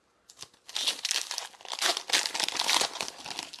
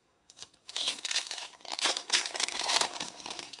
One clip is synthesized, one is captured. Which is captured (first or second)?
first